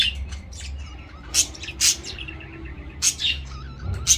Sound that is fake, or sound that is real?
real